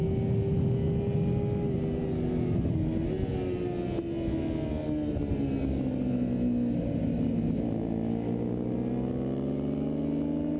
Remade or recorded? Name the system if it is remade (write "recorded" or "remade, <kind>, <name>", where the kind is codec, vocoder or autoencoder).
recorded